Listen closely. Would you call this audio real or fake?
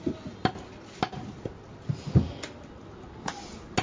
real